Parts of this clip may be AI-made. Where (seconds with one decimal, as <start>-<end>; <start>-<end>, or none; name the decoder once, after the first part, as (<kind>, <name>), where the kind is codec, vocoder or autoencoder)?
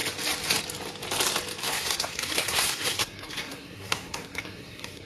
1.6-5.1 (codec, SNAC)